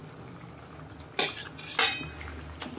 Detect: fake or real real